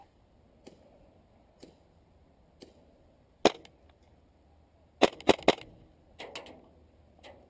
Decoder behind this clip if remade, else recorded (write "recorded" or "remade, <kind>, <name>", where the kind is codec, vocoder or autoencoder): recorded